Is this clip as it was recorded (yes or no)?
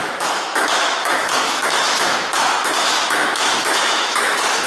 no